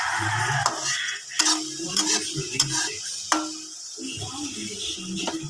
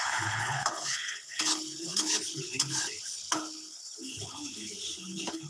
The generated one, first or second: second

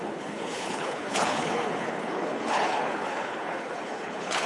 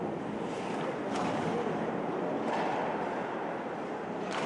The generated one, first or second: first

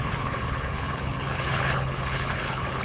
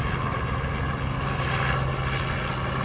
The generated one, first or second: first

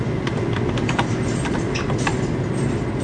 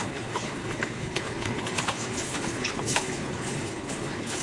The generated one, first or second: second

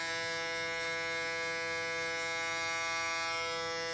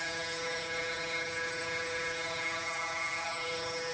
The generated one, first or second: second